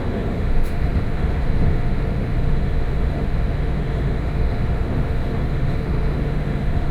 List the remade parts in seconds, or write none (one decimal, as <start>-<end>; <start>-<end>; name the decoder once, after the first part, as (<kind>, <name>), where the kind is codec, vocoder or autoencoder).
0.0-6.9 (autoencoder, DAC-VAE)